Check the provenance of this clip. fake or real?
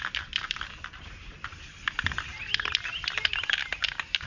real